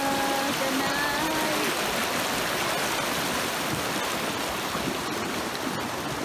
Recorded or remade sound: recorded